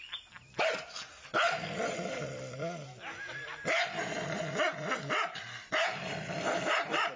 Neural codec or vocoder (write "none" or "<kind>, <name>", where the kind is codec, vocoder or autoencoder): vocoder, BigVGAN v2